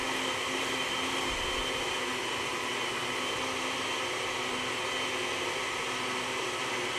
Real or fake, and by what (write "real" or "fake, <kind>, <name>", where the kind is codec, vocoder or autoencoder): real